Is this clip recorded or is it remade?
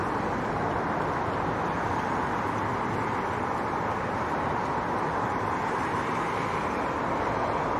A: recorded